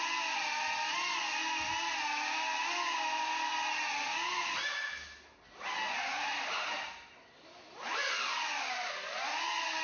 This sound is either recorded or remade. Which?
recorded